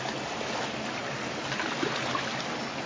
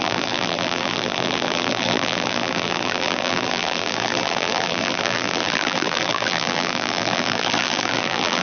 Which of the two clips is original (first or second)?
first